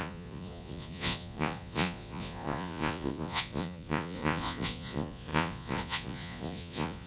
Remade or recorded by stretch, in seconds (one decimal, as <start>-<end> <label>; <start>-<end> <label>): 0.0-7.1 remade